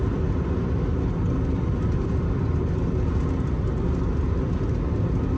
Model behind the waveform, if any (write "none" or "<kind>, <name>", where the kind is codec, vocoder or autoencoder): none